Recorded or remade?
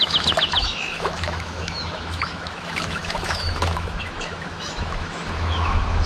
remade